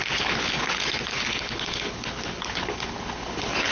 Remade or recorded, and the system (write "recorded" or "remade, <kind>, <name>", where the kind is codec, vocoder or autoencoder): remade, codec, HILCodec